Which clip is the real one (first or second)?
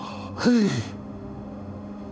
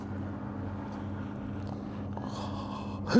second